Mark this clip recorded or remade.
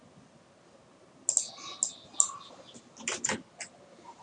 recorded